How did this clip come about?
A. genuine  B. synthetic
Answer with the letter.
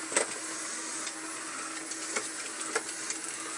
A